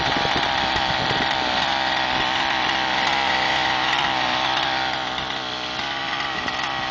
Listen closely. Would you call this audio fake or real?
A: real